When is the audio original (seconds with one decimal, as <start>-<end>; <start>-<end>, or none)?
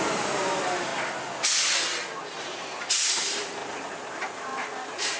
0.9-2.4; 3.6-4.1